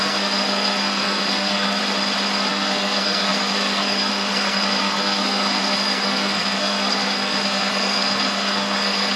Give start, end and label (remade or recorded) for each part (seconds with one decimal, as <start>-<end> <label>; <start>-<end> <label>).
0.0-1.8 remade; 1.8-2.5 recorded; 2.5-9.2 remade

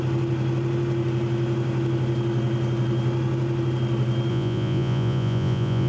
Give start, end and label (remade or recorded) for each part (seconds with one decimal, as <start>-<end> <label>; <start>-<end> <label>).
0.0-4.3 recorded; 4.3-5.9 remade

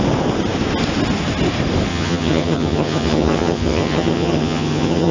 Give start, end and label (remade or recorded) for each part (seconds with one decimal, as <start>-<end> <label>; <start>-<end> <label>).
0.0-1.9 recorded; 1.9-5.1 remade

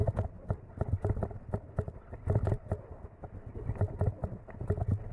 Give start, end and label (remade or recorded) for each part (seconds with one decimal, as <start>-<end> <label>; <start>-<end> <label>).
0.0-5.1 recorded

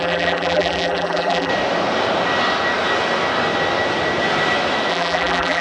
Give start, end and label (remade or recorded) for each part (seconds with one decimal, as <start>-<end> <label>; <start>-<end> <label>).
0.0-1.5 remade; 1.5-4.9 recorded; 4.9-5.6 remade